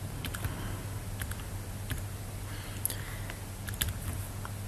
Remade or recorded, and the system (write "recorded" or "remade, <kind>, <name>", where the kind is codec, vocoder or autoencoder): recorded